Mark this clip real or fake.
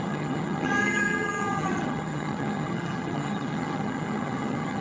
fake